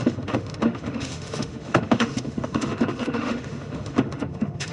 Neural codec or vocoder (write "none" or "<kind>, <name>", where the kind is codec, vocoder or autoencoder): autoencoder, DAC-VAE